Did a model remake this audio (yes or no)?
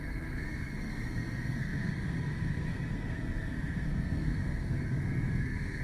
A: yes